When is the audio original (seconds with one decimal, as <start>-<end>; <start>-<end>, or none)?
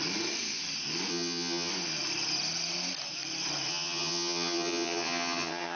0.0-1.1; 1.7-3.7